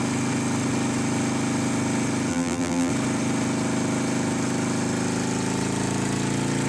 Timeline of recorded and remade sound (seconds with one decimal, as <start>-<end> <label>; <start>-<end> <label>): 0.0-2.3 recorded; 2.3-2.9 remade; 2.9-6.7 recorded